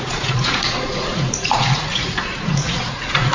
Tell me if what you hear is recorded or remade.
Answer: remade